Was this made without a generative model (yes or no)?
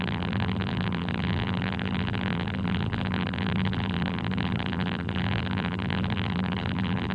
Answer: no